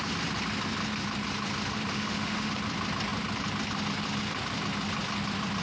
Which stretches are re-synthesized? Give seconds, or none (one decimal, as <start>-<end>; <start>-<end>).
1.9-2.5